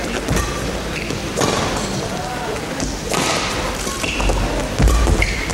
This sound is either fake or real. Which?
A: real